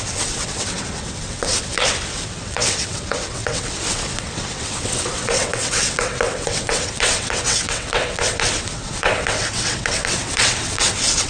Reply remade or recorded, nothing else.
remade